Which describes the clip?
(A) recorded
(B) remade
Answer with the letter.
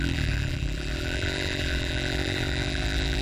B